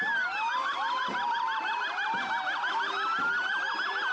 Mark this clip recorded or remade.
recorded